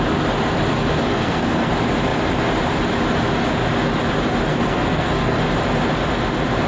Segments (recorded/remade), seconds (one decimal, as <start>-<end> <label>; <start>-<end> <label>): 0.0-1.1 recorded; 1.1-1.7 remade; 1.7-4.5 recorded; 4.5-5.4 remade; 5.4-6.7 recorded